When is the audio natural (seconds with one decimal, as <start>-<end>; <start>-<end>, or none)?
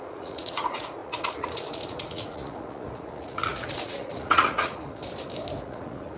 5.0-5.6